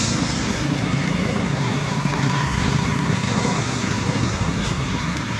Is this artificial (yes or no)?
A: yes